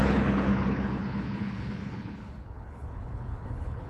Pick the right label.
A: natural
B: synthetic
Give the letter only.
B